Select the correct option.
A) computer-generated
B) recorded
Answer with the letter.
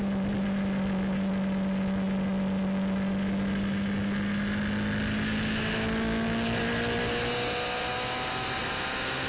B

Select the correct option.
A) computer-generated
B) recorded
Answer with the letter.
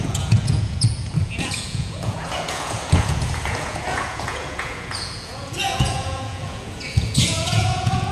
A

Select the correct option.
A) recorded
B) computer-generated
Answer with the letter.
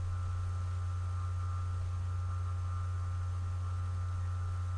A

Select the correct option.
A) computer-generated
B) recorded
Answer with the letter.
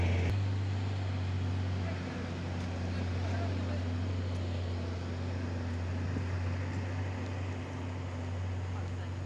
B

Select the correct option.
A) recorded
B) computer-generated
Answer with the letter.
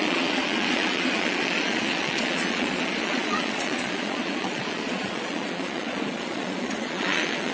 B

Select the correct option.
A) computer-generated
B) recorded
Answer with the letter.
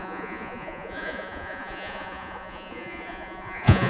A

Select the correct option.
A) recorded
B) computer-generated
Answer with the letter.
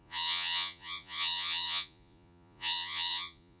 B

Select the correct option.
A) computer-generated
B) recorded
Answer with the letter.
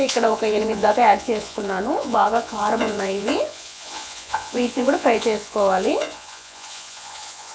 A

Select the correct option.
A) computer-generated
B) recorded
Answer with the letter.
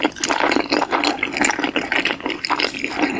B